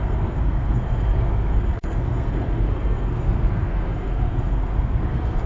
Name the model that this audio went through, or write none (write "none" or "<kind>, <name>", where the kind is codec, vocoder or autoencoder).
codec, SNAC